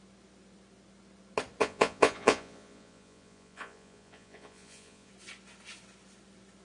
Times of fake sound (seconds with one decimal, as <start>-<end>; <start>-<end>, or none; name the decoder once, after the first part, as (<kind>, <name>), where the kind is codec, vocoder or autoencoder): 1.6-5.1 (vocoder, Vocos)